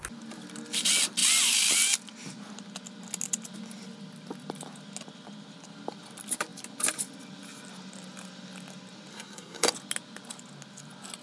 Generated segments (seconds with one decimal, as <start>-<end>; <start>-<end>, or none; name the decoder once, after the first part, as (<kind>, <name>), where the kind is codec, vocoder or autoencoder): 9.1-9.7 (codec, SNAC)